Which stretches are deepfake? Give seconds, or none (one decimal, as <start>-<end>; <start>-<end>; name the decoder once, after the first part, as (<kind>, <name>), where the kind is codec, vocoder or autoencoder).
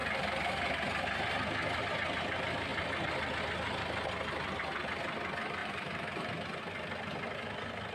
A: 5.6-6.6 (vocoder, BigVGAN v2)